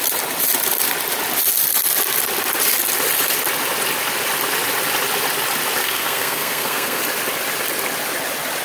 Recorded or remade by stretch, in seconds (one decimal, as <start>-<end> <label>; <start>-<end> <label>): 0.0-5.8 recorded; 5.8-7.0 remade; 7.0-8.6 recorded

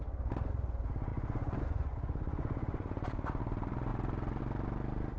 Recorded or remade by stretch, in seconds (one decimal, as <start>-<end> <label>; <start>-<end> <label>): 0.0-1.1 recorded; 1.1-3.4 remade; 3.4-5.2 recorded

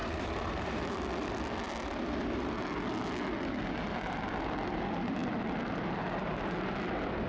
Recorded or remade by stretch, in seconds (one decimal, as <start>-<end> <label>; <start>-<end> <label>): 0.0-0.8 remade; 0.8-7.3 recorded

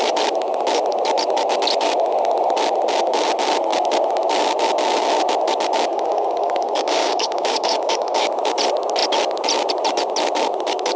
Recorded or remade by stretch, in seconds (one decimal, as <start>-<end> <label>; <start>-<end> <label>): 0.0-5.9 recorded; 5.9-8.3 remade; 8.3-11.0 recorded

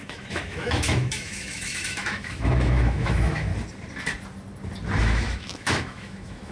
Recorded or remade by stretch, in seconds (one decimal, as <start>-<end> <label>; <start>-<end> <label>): 0.0-3.5 remade; 3.5-5.0 recorded; 5.0-6.5 remade

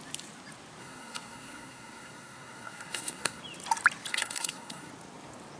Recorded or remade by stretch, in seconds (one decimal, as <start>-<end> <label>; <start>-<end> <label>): 0.0-0.8 recorded; 0.8-3.4 remade; 3.4-4.1 recorded; 4.1-4.9 remade; 4.9-5.6 recorded

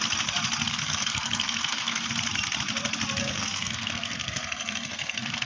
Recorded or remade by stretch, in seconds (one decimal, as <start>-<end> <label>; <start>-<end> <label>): 0.0-0.7 recorded; 0.7-2.1 remade; 2.1-3.2 recorded; 3.2-5.5 remade